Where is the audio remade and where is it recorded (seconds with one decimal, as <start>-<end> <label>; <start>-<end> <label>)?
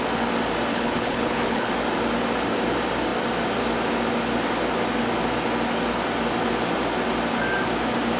0.0-0.7 recorded; 0.7-1.7 remade; 1.7-8.2 recorded